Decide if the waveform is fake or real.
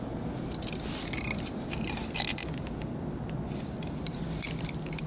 real